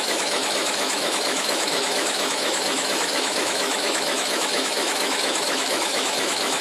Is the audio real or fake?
fake